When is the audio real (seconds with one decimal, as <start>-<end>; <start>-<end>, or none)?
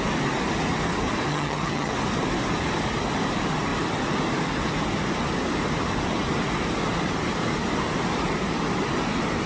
0.0-1.3; 1.9-9.5